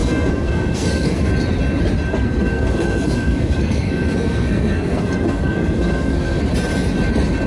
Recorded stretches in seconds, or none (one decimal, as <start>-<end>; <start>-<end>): 1.3-2.1; 6.4-7.5